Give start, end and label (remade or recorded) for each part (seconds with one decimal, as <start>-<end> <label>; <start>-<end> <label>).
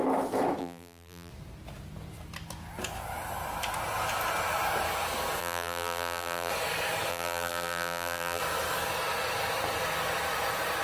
0.0-0.6 recorded; 0.6-1.3 remade; 1.3-5.4 recorded; 5.4-6.5 remade; 6.5-7.1 recorded; 7.1-8.4 remade; 8.4-10.8 recorded